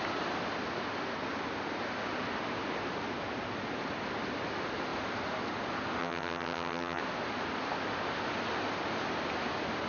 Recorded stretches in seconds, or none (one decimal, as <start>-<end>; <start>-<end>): 0.0-6.0; 7.0-9.9